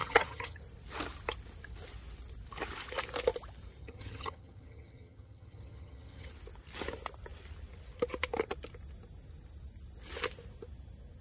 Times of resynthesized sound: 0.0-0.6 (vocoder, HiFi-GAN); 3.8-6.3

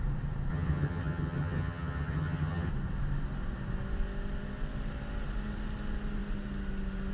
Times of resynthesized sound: 0.5-2.7 (vocoder, HiFi-GAN)

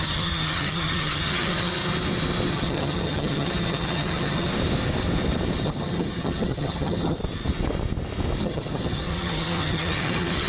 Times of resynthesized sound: 0.0-1.8 (vocoder, HiFi-GAN); 2.5-4.5; 5.6-7.2; 8.4-10.5

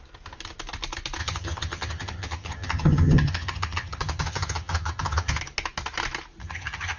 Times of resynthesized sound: 1.2-5.4 (vocoder, HiFi-GAN); 6.4-7.0

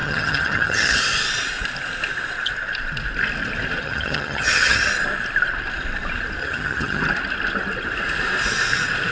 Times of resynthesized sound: 0.0-1.0 (vocoder, HiFi-GAN); 3.8-4.9; 6.4-7.0

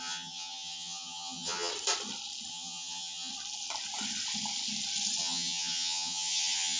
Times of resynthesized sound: 0.0-1.7 (vocoder, HiFi-GAN); 2.5-3.3; 5.2-6.8

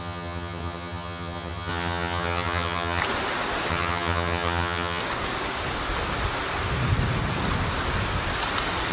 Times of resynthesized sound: 0.0-3.0 (vocoder, HiFi-GAN); 3.7-5.0

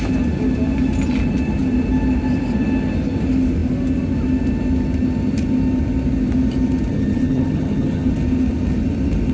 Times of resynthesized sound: 6.9-8.1 (vocoder, HiFi-GAN)